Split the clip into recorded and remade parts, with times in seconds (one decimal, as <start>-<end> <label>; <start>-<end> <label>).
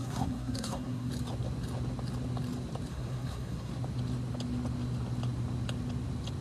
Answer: 0.0-1.1 remade; 1.1-2.9 recorded; 2.9-3.7 remade; 3.7-6.4 recorded